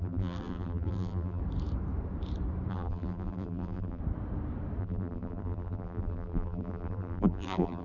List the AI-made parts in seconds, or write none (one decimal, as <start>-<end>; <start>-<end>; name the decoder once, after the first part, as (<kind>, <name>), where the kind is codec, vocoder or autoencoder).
0.0-1.4 (vocoder, BigVGAN v2); 2.7-4.0; 4.8-7.8